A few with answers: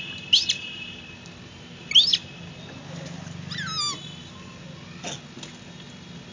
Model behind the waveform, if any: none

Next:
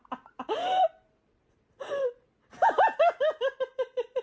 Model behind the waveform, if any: none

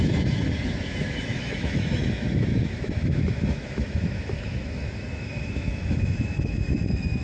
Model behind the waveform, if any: autoencoder, DAC-VAE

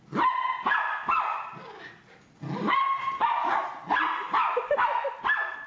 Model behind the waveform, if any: none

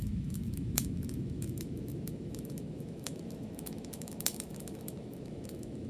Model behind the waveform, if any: autoencoder, DAC-VAE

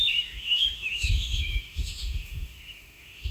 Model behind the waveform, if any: autoencoder, DAC-VAE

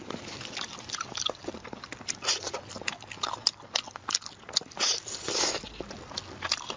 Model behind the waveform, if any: none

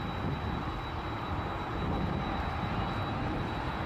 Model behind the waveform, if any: none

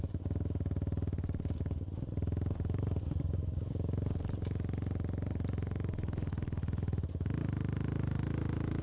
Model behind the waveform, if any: none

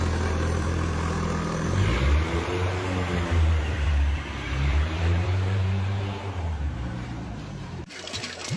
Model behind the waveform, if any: vocoder, BigVGAN v2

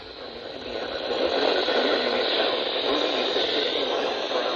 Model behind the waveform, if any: none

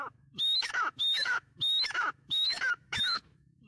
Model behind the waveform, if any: autoencoder, DAC-VAE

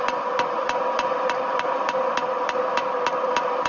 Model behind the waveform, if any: none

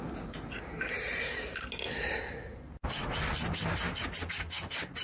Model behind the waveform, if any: none